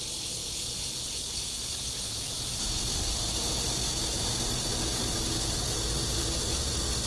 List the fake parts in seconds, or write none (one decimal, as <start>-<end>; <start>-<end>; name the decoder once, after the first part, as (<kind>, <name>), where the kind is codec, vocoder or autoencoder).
0.4-2.8 (vocoder, Vocos)